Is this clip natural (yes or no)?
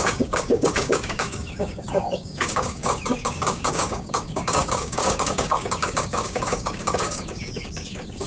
no